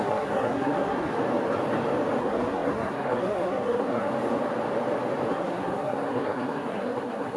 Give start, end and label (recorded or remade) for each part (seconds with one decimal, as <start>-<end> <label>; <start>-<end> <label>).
0.0-1.1 remade; 1.1-2.2 recorded; 2.2-4.1 remade; 4.1-5.3 recorded; 5.3-7.4 remade

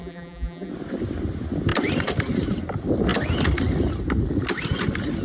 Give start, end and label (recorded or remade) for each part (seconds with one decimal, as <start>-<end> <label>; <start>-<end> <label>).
0.0-0.7 remade; 0.7-5.2 recorded